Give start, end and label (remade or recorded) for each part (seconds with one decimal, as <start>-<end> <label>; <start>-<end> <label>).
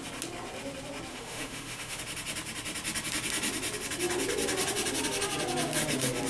0.0-1.1 recorded; 1.1-2.0 remade; 2.0-6.3 recorded